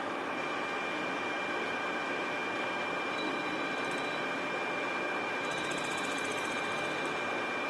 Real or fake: real